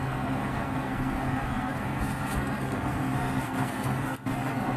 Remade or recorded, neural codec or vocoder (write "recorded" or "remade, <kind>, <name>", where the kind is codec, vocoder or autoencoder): remade, codec, SNAC